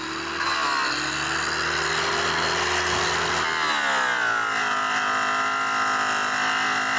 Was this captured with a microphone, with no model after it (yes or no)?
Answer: yes